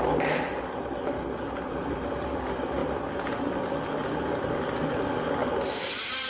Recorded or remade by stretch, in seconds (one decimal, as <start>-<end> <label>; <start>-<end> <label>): 0.0-6.3 recorded